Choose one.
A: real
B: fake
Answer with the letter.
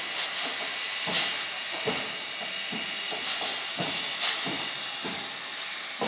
A